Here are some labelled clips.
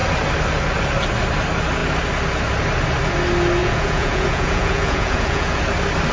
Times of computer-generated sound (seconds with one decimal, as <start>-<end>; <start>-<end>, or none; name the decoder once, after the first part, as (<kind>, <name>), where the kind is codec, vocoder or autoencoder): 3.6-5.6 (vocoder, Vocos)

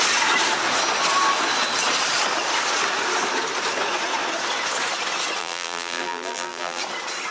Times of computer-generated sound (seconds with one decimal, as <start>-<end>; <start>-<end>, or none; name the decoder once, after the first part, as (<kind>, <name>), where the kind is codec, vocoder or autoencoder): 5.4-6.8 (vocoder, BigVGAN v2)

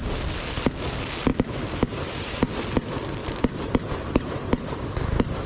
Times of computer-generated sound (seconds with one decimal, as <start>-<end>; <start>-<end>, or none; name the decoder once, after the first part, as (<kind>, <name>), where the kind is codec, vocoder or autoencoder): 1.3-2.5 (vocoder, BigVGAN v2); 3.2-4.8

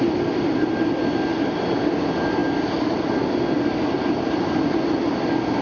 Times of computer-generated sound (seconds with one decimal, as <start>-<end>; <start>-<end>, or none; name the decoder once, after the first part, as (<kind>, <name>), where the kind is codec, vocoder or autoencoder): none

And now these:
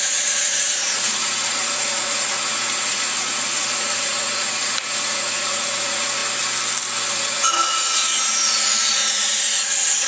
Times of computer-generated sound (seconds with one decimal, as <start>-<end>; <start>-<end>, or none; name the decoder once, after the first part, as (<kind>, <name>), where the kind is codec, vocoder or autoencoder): 0.0-6.2 (vocoder, Vocos); 7.1-10.1